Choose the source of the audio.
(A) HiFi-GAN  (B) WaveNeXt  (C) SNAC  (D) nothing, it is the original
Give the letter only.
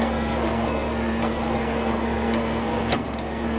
C